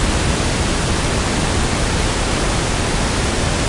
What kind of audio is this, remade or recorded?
recorded